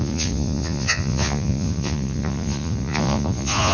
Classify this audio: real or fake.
fake